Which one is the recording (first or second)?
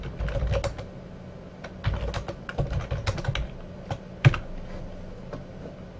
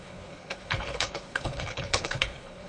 first